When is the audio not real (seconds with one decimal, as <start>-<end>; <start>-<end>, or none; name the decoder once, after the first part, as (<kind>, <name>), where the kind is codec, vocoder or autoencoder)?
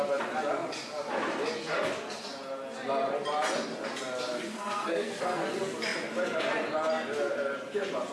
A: 4.5-5.5 (codec, SNAC)